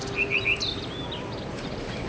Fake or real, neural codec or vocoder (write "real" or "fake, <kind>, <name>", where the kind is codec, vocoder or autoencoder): fake, vocoder, BigVGAN v2